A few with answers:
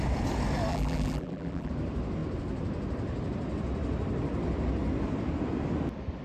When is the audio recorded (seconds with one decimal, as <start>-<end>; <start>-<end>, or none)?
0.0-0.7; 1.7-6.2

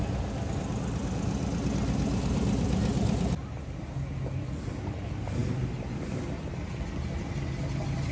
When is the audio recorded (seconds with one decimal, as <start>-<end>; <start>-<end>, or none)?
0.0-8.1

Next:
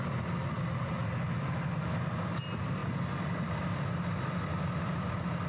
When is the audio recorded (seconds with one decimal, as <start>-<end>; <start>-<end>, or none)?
0.0-5.5

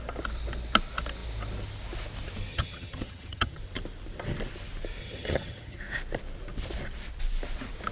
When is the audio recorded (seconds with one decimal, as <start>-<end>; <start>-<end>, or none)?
0.0-2.5; 3.6-5.0; 5.8-7.9

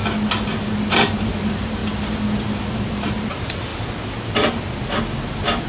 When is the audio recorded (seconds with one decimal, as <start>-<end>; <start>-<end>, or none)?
0.0-0.9; 1.8-2.7; 3.7-5.3

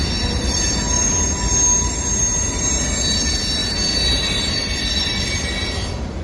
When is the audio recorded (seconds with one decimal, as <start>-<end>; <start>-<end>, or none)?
0.0-3.6; 4.8-6.2

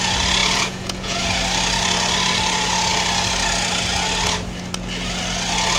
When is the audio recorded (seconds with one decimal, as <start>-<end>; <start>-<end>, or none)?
0.0-0.4; 1.2-5.8